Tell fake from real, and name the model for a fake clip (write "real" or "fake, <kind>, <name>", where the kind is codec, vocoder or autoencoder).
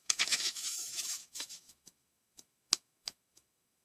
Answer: fake, autoencoder, DAC-VAE